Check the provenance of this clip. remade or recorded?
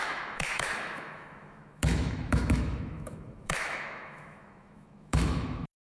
remade